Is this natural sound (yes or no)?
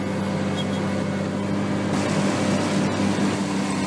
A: yes